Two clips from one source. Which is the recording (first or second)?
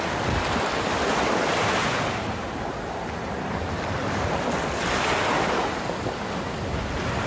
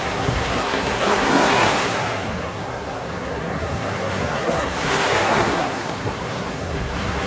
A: first